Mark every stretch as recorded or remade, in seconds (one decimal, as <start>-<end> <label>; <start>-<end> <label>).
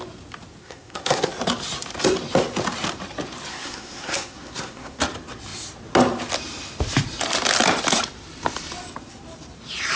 0.0-0.6 recorded; 0.6-1.3 remade; 1.3-3.5 recorded; 3.5-5.0 remade; 5.0-10.0 recorded